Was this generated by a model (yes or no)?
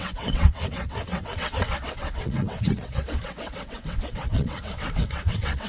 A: yes